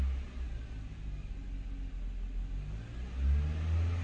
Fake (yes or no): no